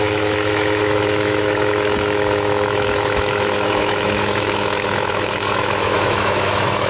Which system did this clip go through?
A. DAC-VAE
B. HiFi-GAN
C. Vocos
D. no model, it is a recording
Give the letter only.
A